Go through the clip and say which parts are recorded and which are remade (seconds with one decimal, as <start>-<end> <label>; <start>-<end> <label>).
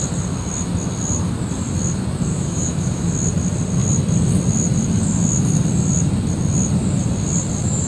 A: 0.0-2.3 recorded; 2.3-3.1 remade; 3.1-7.9 recorded